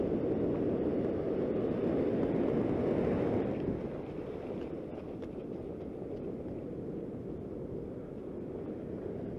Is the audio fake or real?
real